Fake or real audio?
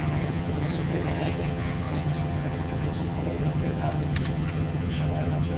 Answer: fake